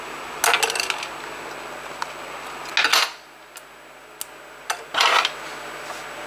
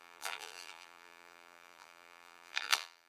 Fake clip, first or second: second